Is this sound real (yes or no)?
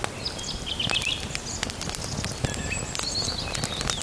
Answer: yes